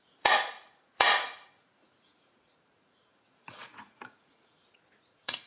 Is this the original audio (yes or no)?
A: no